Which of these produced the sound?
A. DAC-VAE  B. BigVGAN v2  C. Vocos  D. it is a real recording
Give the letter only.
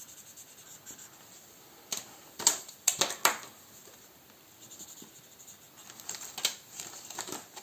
D